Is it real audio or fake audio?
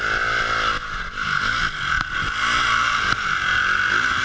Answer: real